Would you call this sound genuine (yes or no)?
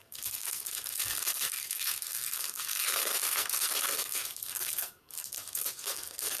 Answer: no